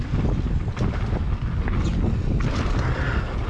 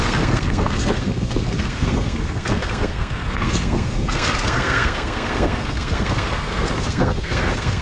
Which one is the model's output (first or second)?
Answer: second